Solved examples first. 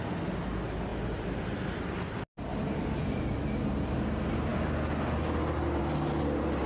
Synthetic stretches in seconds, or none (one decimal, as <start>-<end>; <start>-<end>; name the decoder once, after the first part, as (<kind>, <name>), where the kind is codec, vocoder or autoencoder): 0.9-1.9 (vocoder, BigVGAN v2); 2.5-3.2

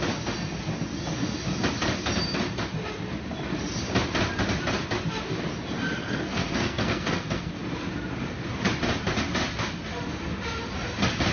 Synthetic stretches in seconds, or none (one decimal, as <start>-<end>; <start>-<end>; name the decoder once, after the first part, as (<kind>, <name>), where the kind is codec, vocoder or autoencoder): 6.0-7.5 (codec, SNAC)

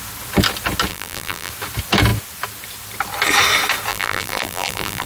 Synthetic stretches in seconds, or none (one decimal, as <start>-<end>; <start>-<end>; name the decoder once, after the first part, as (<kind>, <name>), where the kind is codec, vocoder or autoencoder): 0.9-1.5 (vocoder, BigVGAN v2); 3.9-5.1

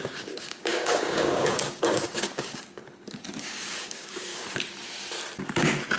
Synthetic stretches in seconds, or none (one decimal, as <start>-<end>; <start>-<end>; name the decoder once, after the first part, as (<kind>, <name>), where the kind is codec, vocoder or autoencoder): 0.0-2.8 (codec, DAC); 3.4-4.3

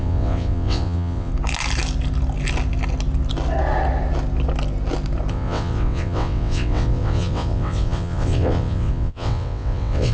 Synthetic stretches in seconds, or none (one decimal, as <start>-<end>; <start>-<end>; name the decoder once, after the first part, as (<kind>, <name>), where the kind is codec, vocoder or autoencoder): 0.0-1.3 (vocoder, WaveNeXt); 5.3-10.1